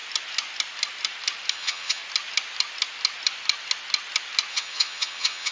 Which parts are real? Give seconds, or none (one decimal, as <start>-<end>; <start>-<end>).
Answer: 0.0-1.5; 2.0-4.5